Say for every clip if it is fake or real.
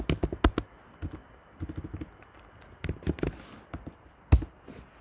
real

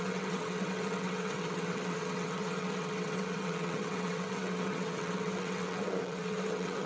fake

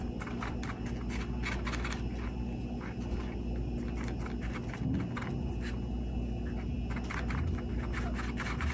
real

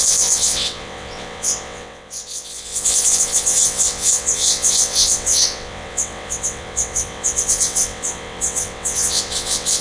fake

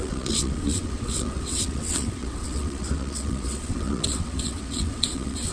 fake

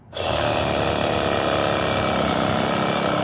real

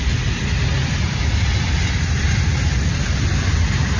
real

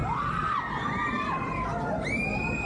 real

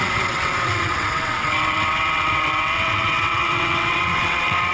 fake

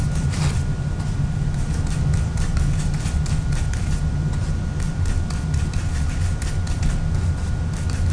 real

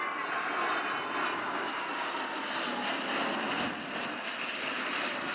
real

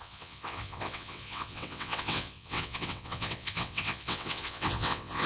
fake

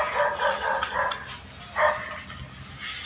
real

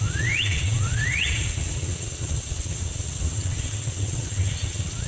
fake